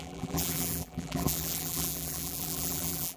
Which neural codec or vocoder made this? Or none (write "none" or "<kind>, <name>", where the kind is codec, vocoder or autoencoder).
vocoder, BigVGAN v2